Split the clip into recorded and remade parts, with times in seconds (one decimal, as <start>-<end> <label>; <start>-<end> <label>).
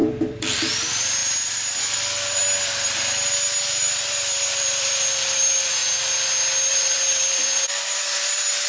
0.0-1.2 remade; 1.2-1.8 recorded; 1.8-2.4 remade; 2.4-3.7 recorded; 3.7-5.8 remade; 5.8-6.7 recorded; 6.7-8.7 remade